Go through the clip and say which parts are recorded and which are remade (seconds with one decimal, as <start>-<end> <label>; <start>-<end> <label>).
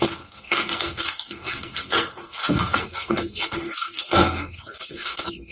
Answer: 0.0-5.5 remade